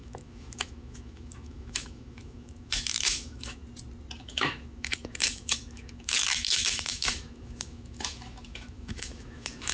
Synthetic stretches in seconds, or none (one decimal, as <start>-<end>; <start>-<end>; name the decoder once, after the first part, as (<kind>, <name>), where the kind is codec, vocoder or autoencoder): 0.0-3.6 (autoencoder, DAC-VAE); 4.2-9.7